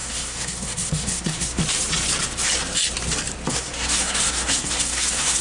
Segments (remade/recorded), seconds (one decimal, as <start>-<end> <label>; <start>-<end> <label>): 0.0-1.6 remade; 1.6-3.5 recorded; 3.5-5.4 remade